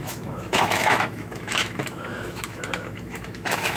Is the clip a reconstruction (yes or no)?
yes